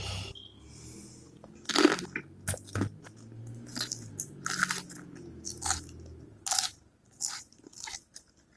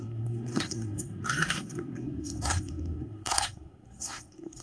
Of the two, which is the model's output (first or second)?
second